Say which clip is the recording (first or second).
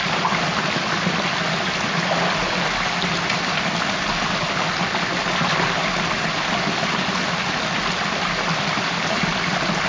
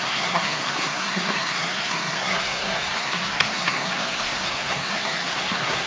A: first